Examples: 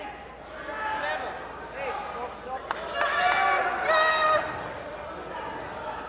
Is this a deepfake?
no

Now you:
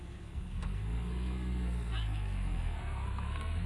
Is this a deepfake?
yes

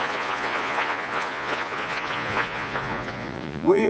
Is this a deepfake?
yes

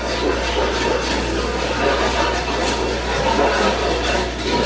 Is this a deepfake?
no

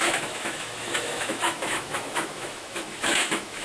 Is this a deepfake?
yes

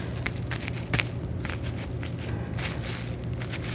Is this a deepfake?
no